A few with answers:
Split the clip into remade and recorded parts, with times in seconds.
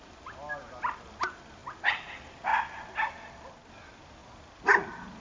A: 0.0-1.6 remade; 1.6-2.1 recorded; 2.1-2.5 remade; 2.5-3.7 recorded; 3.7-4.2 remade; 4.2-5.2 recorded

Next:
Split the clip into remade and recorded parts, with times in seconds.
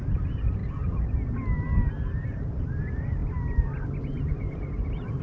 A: 0.0-0.6 remade; 0.6-1.9 recorded; 1.9-3.2 remade; 3.2-4.0 recorded; 4.0-5.2 remade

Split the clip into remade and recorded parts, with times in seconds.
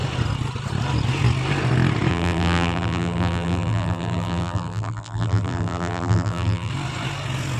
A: 0.0-2.1 recorded; 2.1-6.7 remade; 6.7-7.6 recorded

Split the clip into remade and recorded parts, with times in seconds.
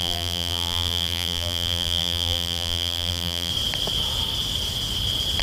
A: 0.0-3.5 remade; 3.5-5.4 recorded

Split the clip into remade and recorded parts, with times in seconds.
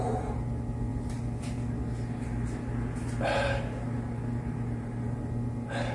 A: 0.0-5.9 recorded